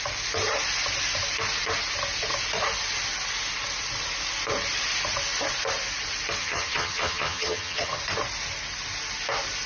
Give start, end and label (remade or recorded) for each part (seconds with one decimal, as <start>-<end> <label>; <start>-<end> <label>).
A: 0.0-6.4 recorded; 6.4-8.0 remade; 8.0-9.7 recorded